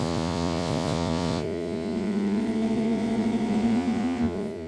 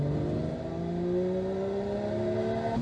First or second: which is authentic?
second